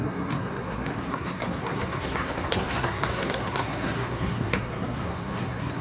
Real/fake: fake